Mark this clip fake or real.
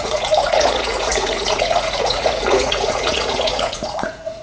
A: fake